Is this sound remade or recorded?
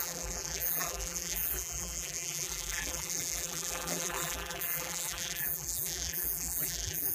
remade